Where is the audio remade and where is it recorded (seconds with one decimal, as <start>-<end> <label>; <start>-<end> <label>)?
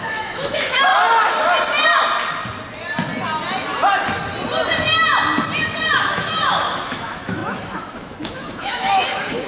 0.0-0.9 remade; 0.9-6.0 recorded; 6.0-9.5 remade